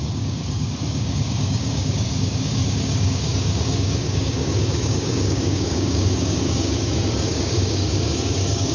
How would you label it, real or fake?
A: fake